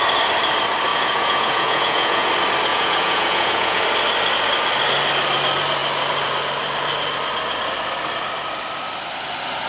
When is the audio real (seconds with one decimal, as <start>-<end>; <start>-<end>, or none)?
0.0-0.9; 2.3-2.7; 3.8-9.7

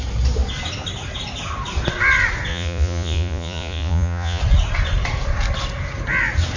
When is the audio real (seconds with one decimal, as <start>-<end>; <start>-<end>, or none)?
0.0-2.5; 4.4-6.6

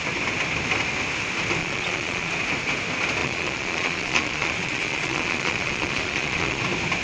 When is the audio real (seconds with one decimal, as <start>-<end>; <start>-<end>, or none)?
0.0-1.6; 2.3-3.2; 6.6-7.0

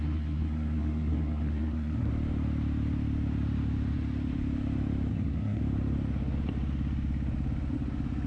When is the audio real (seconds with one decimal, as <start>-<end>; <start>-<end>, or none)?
2.1-5.1; 5.6-8.3

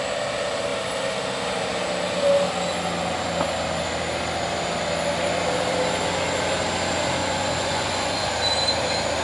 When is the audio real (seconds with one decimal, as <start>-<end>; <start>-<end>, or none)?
0.0-7.2; 8.3-9.2

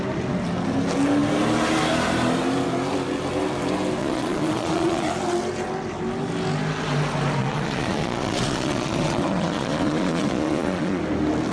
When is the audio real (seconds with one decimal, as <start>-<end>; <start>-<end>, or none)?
0.0-4.0; 5.1-7.4; 11.0-11.5

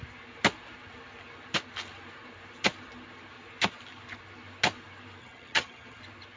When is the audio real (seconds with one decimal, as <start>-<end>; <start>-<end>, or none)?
0.0-5.2; 6.0-6.4